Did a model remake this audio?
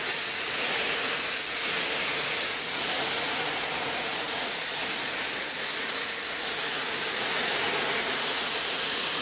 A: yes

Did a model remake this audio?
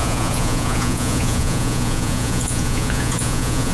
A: yes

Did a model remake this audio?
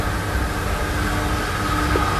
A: no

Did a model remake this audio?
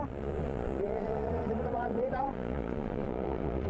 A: yes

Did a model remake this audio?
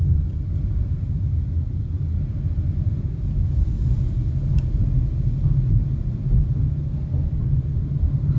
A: no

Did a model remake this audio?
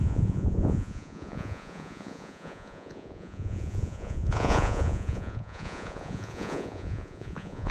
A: yes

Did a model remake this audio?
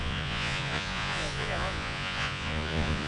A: yes